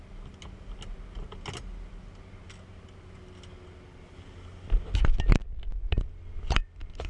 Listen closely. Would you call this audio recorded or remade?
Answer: recorded